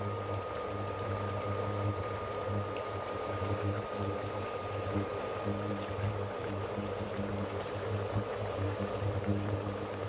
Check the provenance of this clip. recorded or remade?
remade